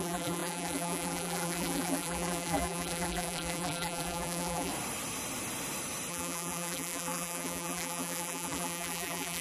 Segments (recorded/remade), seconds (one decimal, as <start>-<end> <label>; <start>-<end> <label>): 0.0-4.7 remade; 4.7-6.1 recorded; 6.1-9.4 remade